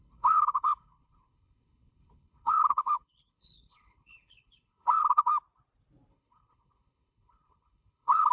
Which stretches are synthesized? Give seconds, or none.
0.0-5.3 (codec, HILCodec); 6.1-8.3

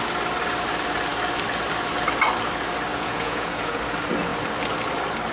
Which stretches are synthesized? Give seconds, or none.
2.9-3.8 (vocoder, Vocos)

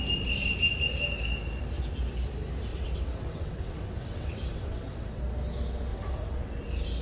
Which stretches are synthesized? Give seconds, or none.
2.7-5.2 (vocoder, WaveNeXt); 5.9-6.6

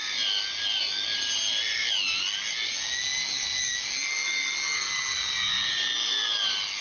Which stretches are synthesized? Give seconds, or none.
none